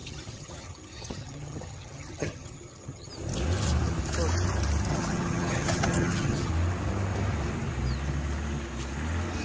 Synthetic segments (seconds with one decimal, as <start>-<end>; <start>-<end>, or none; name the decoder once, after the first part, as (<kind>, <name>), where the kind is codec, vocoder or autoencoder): 0.0-3.1 (vocoder, HiFi-GAN); 4.9-6.5